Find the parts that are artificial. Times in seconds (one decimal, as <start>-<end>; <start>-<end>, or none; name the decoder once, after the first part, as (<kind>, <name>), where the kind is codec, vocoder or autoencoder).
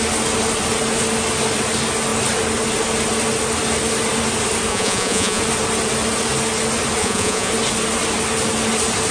4.7-5.4 (vocoder, Vocos); 7.0-7.5